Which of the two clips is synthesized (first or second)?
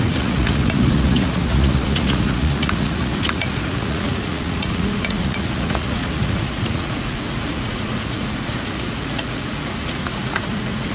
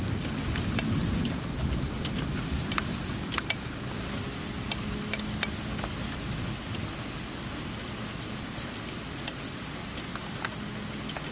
first